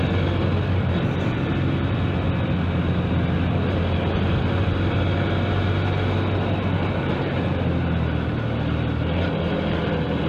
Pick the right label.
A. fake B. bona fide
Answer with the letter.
B